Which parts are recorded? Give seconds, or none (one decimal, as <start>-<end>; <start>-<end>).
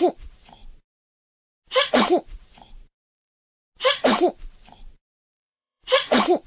0.6-1.9; 3.3-4.9